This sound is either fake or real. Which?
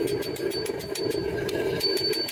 real